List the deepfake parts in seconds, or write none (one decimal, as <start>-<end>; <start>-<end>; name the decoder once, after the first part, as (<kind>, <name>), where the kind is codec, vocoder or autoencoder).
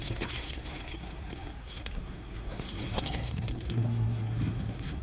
0.0-5.0 (codec, SNAC)